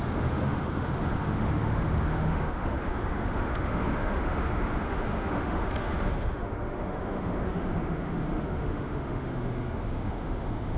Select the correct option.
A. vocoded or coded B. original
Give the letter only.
A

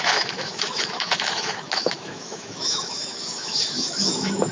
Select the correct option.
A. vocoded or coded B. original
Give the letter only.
A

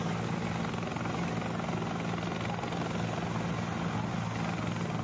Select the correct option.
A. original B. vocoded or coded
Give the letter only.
A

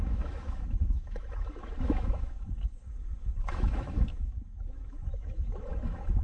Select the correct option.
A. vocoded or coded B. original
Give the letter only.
A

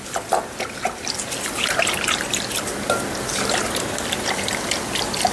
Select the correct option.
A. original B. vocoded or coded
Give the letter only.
A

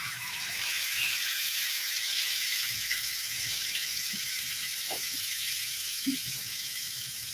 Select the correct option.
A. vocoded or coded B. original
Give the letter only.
A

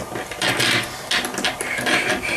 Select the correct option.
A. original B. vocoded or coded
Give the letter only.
A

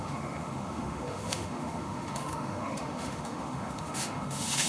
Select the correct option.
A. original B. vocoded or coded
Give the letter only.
B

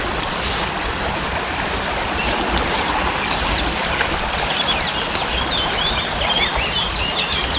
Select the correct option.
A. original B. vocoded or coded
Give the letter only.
A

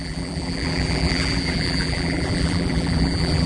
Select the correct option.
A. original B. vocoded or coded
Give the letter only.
B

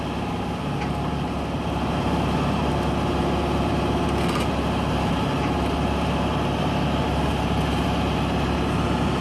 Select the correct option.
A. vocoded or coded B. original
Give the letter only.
B